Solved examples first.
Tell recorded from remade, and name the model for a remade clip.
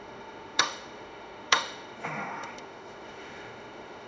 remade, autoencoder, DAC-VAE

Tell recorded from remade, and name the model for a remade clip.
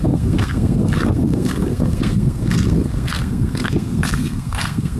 remade, codec, SNAC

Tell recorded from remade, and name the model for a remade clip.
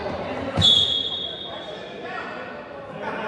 recorded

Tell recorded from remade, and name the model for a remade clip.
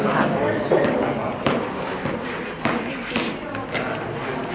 recorded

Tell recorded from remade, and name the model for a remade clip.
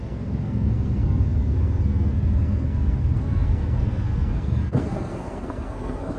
remade, codec, SNAC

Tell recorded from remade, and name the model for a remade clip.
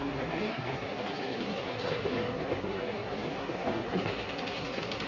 remade, codec, SNAC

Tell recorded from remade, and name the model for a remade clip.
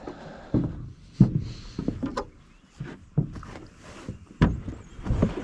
recorded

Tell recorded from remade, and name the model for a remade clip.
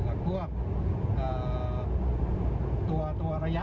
recorded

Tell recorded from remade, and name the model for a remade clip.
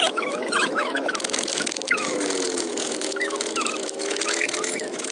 remade, autoencoder, DAC-VAE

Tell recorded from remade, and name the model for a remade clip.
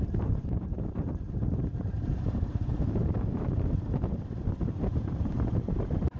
remade, vocoder, BigVGAN v2